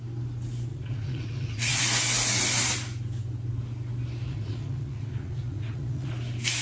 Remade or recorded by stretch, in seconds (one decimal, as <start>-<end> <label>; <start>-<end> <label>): 0.0-0.7 recorded; 0.7-1.8 remade; 1.8-4.2 recorded; 4.2-6.1 remade; 6.1-6.6 recorded